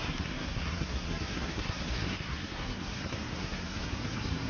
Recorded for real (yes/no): no